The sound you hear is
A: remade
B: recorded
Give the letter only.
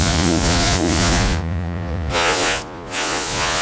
A